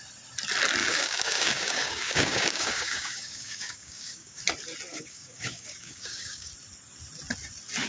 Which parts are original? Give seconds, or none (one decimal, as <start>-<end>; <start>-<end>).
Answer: 0.0-0.8; 4.4-4.9; 6.5-7.9